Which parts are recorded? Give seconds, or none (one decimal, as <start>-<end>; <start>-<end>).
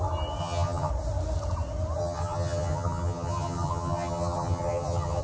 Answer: 0.0-0.4; 0.9-2.0